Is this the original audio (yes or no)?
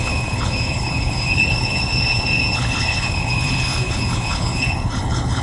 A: no